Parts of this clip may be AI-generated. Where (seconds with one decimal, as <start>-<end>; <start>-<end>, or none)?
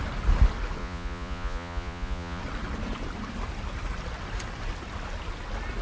0.8-2.4